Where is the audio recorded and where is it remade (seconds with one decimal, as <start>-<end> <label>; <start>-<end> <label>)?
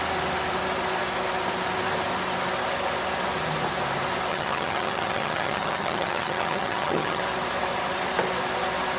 0.0-4.3 recorded; 4.3-7.2 remade; 7.2-9.0 recorded